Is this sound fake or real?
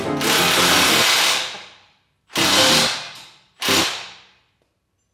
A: real